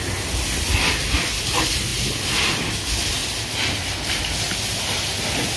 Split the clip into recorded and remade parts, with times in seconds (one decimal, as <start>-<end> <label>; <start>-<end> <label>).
0.0-5.6 recorded